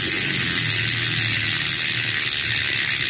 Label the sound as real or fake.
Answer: real